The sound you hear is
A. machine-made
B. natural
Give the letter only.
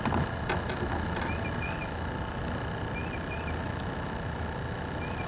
B